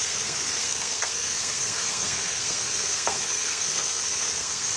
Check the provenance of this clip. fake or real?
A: fake